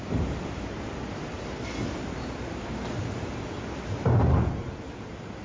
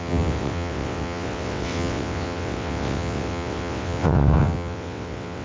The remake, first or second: second